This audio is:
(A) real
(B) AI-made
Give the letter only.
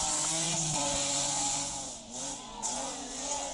B